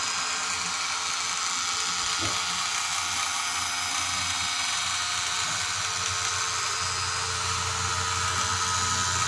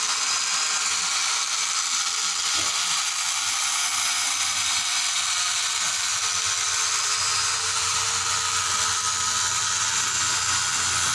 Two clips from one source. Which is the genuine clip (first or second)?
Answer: first